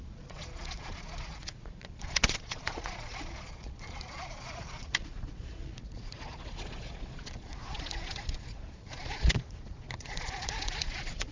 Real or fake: fake